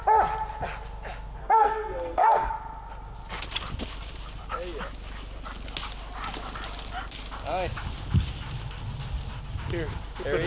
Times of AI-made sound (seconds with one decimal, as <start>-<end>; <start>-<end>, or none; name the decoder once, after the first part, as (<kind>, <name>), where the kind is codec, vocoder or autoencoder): 1.4-2.5 (codec, SNAC)

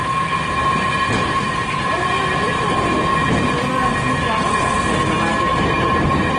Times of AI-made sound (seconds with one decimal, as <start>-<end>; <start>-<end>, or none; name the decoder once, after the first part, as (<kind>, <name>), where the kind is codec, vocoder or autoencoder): 0.6-2.8 (vocoder, BigVGAN v2); 5.5-6.4

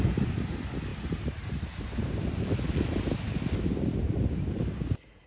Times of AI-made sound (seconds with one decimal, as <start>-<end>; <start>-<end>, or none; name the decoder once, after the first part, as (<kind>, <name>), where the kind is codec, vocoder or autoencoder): none

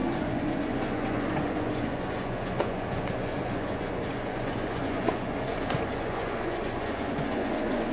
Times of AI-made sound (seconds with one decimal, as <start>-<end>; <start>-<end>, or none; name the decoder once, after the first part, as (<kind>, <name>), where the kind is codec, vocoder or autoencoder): 0.0-7.9 (vocoder, Vocos)